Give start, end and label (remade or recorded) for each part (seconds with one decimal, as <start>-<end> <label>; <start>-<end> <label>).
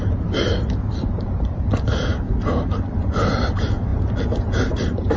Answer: 0.0-2.1 remade; 2.1-3.3 recorded; 3.3-5.2 remade